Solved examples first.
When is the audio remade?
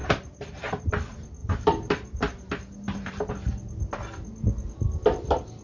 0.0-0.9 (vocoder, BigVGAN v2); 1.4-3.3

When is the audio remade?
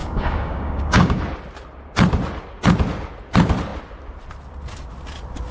0.0-1.2 (codec, DAC)